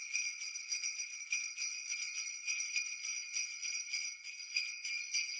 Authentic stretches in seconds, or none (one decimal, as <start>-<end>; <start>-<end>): 0.0-5.4